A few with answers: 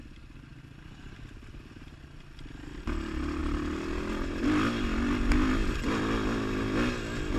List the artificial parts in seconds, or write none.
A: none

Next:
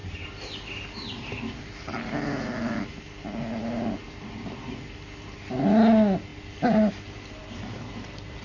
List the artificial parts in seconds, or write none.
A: none

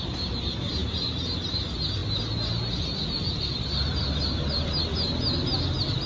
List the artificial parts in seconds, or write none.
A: none

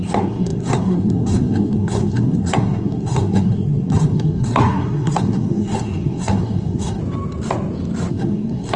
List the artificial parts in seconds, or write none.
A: 0.0-7.0; 8.1-8.8

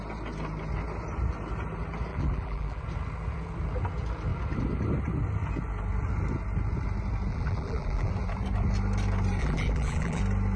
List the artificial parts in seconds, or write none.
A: 2.1-2.8; 7.3-8.1; 9.4-10.2

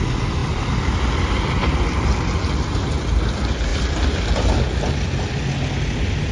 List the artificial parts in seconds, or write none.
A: 0.4-1.6; 3.7-4.2

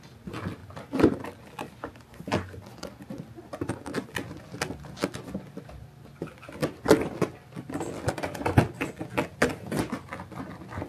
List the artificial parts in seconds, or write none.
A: none